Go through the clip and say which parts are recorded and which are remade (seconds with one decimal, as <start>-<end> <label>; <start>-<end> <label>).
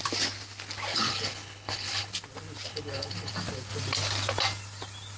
0.0-0.9 recorded; 0.9-2.1 remade; 2.1-2.7 recorded; 2.7-3.3 remade; 3.3-5.2 recorded